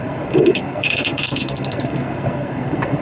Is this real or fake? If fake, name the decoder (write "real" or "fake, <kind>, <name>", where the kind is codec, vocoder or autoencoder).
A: fake, codec, SNAC